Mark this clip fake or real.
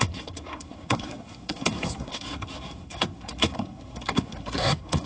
fake